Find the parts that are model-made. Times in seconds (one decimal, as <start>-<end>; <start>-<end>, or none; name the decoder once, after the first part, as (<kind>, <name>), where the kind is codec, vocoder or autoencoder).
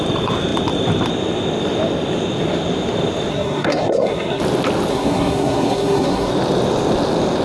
3.3-4.4 (codec, SNAC); 4.9-6.3